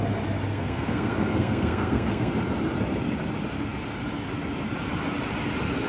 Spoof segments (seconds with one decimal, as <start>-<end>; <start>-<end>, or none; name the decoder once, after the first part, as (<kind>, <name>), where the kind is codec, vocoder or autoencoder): 0.5-2.3 (codec, SNAC)